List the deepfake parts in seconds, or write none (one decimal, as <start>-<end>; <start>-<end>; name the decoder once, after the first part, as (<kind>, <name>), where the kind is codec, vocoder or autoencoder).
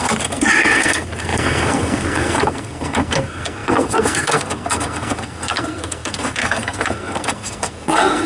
0.0-8.3 (codec, SNAC)